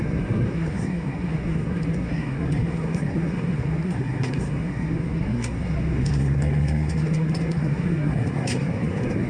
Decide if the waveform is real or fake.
fake